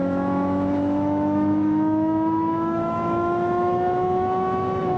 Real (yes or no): no